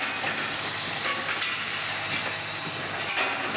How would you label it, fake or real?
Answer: real